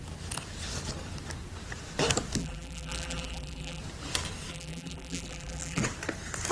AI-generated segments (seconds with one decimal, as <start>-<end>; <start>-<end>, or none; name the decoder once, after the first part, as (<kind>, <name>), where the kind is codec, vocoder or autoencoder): 2.4-3.8 (vocoder, BigVGAN v2); 4.5-5.8